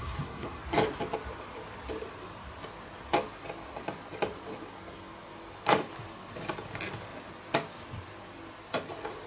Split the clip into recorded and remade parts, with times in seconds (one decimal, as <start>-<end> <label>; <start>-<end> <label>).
0.0-0.6 remade; 0.6-9.3 recorded